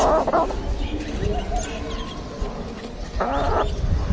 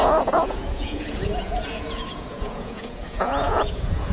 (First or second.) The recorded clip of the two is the first